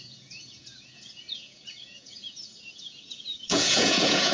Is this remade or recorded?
remade